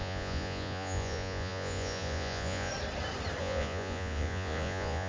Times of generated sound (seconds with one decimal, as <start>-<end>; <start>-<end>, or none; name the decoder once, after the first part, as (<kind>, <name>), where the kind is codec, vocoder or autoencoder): 0.0-2.7 (vocoder, Vocos); 3.4-5.1